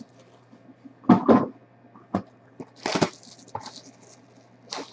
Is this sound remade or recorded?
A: recorded